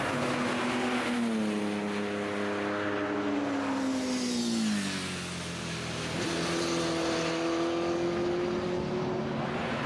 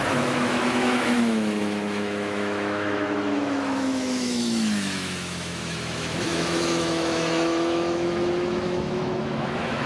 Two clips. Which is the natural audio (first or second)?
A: first